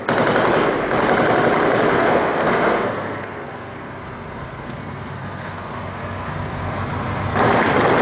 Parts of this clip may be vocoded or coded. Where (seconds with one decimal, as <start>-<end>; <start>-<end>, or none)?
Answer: 1.9-6.7